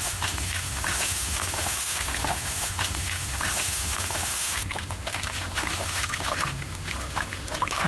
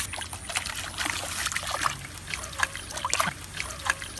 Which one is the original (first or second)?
second